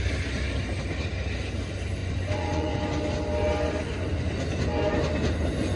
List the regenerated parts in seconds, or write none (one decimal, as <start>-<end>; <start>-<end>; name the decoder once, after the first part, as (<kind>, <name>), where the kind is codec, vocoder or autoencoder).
2.0-2.8 (vocoder, Vocos)